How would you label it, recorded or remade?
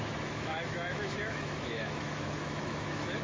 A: remade